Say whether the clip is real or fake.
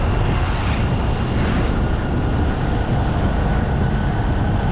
real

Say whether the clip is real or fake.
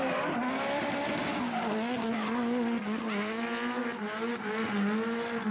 real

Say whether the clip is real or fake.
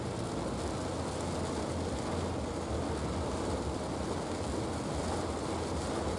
real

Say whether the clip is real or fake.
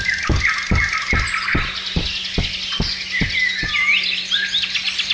real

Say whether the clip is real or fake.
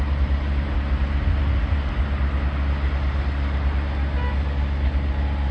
real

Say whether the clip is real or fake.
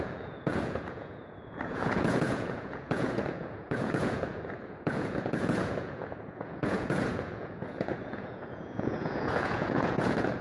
fake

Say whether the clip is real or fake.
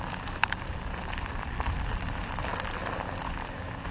real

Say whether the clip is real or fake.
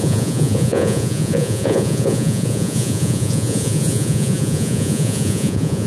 fake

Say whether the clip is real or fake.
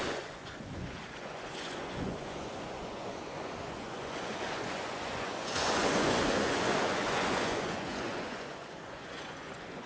fake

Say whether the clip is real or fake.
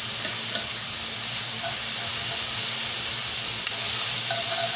real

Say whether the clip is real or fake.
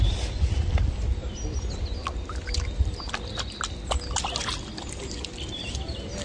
real